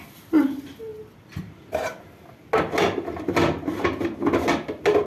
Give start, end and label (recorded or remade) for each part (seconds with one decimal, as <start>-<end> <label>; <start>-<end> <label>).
0.0-5.1 recorded